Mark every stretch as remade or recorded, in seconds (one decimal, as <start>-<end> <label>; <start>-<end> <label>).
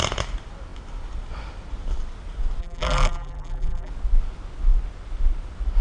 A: 0.0-2.6 recorded; 2.6-3.9 remade; 3.9-5.8 recorded